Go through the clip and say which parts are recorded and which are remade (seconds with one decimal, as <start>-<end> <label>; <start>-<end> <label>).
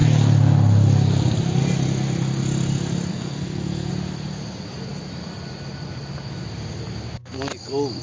0.0-3.1 recorded; 3.1-3.9 remade; 3.9-8.0 recorded